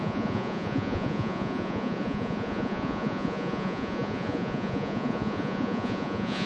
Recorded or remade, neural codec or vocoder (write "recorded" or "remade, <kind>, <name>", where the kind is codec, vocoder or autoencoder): remade, vocoder, Vocos